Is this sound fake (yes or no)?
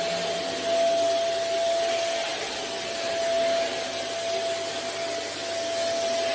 no